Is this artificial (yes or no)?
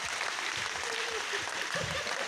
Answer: yes